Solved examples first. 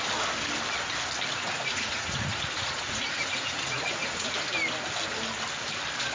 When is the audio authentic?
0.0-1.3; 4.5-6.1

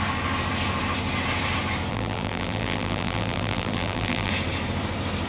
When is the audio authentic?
0.0-1.9; 4.3-5.3

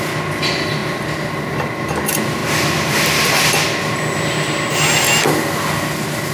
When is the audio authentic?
0.0-6.3